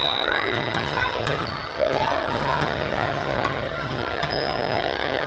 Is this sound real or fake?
fake